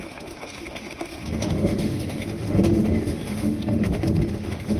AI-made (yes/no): yes